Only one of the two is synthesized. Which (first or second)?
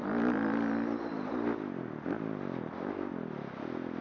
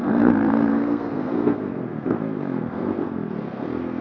second